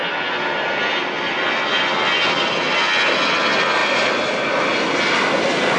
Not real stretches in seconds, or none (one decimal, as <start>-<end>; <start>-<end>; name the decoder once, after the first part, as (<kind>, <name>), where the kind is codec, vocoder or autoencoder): none